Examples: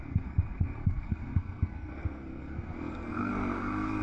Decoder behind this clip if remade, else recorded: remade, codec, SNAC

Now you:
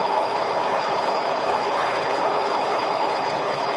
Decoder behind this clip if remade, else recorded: remade, codec, HILCodec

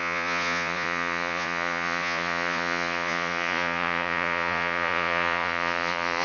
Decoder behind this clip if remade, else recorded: remade, vocoder, Vocos